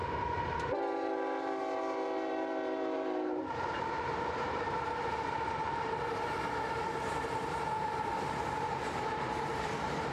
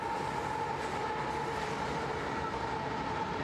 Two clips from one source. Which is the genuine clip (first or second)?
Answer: second